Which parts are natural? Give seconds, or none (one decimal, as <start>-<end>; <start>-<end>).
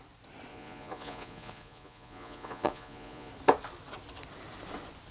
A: 0.0-0.5; 3.3-5.1